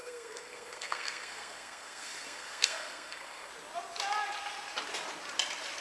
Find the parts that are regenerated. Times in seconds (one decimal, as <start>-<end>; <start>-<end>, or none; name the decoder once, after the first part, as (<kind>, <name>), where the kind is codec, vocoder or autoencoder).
0.0-3.5 (codec, SNAC)